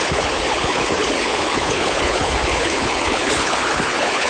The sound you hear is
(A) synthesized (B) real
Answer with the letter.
A